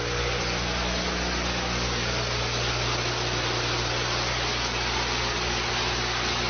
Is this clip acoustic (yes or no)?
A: yes